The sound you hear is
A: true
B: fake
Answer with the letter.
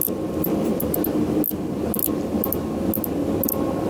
A